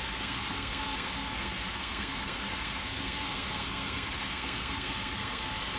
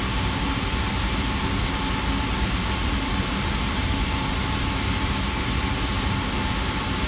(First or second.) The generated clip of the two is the first